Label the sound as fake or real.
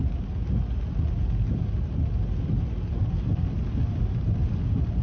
real